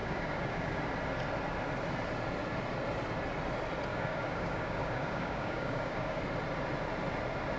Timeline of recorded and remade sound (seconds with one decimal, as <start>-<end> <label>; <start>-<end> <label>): 0.0-0.8 remade; 0.8-3.9 recorded; 3.9-6.2 remade; 6.2-7.6 recorded